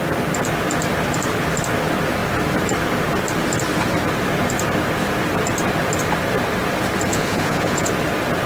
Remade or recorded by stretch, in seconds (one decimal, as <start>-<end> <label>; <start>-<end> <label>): 0.0-7.1 recorded; 7.1-7.9 remade; 7.9-8.5 recorded